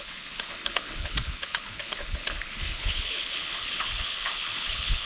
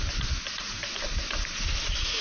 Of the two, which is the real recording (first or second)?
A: second